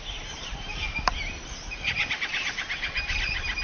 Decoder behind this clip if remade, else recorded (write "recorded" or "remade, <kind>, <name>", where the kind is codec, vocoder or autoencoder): remade, vocoder, BigVGAN v2